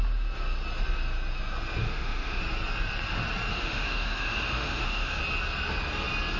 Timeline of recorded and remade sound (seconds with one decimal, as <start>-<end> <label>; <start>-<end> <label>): 0.0-1.8 recorded; 1.8-2.4 remade; 2.4-3.5 recorded; 3.5-5.2 remade; 5.2-6.4 recorded